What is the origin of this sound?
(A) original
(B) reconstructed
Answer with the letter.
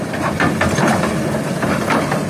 A